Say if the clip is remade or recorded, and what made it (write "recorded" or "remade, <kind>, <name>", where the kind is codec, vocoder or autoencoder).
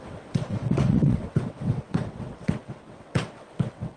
remade, vocoder, WaveNeXt